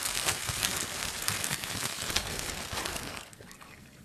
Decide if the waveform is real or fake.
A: fake